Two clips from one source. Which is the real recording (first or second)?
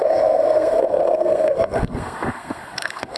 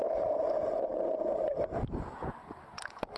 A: second